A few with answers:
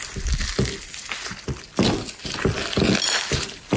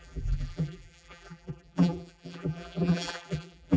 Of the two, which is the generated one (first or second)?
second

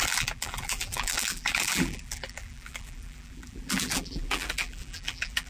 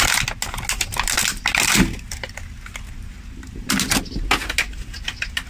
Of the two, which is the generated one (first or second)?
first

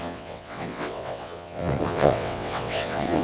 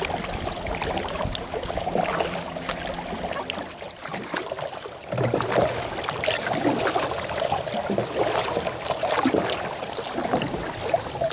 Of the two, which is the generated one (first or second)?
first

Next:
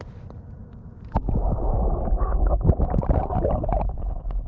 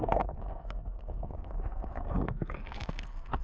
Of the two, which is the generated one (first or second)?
second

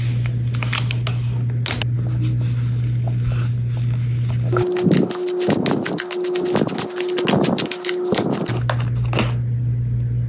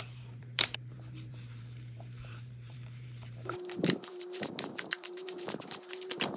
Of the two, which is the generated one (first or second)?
second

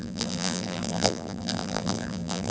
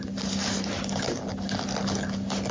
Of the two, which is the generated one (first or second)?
first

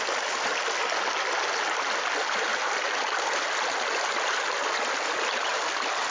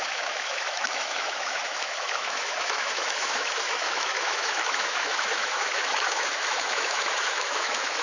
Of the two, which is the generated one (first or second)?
second